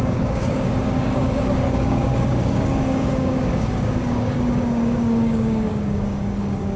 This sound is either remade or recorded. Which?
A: remade